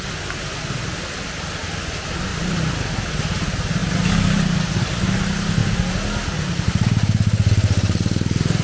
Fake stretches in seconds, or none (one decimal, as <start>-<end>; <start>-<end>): none